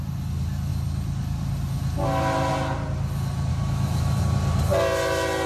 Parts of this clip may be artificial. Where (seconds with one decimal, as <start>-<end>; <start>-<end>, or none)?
3.5-4.2